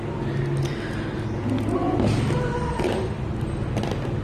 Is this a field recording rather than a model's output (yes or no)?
yes